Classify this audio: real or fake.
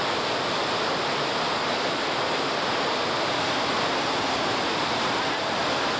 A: real